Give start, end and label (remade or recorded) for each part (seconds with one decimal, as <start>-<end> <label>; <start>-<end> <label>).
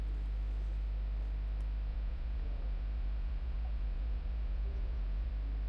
0.0-1.9 recorded; 1.9-5.3 remade; 5.3-5.7 recorded